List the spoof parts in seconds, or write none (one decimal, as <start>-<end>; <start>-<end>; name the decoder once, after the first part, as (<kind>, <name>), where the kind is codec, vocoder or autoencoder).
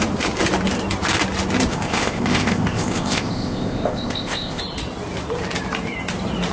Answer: 1.7-4.6 (codec, ZipCodec)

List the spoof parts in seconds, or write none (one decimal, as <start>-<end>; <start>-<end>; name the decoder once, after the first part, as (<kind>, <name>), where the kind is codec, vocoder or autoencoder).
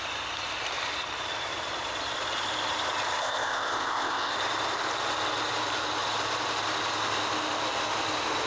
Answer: 3.2-4.3 (codec, ZipCodec)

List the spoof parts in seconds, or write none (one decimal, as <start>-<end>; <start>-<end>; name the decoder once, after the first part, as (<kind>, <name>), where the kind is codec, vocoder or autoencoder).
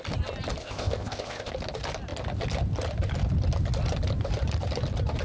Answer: 0.6-1.5 (codec, ZipCodec)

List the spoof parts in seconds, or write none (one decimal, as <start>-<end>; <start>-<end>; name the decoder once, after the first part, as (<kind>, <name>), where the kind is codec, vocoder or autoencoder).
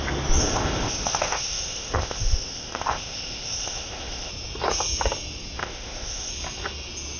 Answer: 0.4-4.3 (codec, ZipCodec); 5.6-6.3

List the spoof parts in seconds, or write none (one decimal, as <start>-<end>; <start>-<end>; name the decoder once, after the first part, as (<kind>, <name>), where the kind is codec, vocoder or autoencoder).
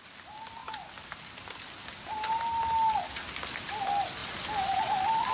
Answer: none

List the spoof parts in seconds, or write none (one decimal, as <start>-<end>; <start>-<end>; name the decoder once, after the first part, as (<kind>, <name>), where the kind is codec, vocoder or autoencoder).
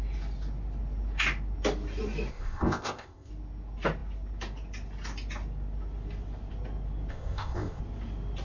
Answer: 2.3-3.3 (codec, ZipCodec); 7.1-7.8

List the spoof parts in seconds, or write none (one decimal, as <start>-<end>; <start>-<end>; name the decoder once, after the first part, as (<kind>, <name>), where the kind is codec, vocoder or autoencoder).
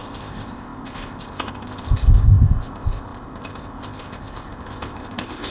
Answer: 0.0-5.5 (codec, ZipCodec)